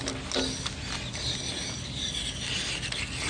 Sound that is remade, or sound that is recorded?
recorded